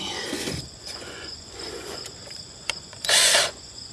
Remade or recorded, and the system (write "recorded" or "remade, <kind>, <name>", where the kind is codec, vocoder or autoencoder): remade, vocoder, Vocos